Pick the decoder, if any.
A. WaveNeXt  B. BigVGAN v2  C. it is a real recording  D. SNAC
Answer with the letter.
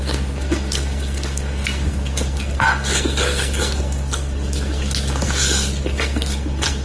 D